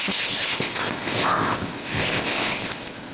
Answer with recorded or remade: remade